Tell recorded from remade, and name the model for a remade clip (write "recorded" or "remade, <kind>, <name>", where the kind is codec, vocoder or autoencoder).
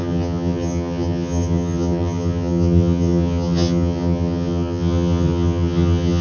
remade, vocoder, HiFi-GAN